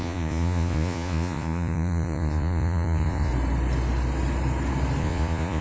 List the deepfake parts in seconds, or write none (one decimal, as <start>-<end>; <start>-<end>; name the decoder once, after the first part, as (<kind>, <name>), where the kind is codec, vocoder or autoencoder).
0.0-3.3 (vocoder, Vocos); 5.0-5.6